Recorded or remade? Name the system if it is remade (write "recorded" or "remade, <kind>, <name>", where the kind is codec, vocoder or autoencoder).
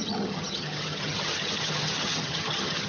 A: remade, vocoder, HiFi-GAN